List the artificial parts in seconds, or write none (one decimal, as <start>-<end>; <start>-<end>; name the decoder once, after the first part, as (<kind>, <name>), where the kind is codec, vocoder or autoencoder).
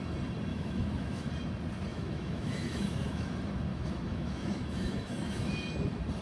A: 0.5-1.3 (autoencoder, DAC-VAE); 1.9-3.3; 3.7-5.5